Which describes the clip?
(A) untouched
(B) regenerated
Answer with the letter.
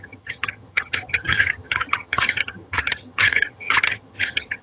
B